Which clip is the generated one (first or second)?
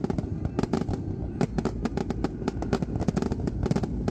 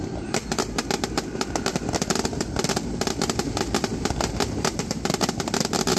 second